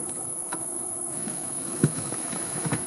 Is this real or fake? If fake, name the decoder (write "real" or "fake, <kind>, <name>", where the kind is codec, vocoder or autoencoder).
fake, autoencoder, DAC-VAE